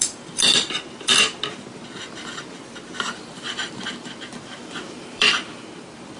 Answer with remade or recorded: remade